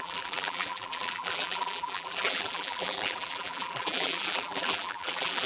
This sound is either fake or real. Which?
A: fake